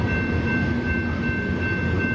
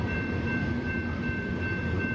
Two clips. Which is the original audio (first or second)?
first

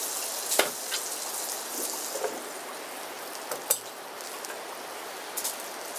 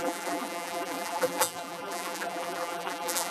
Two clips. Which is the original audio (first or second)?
first